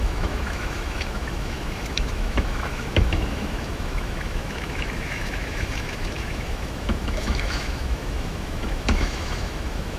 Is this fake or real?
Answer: fake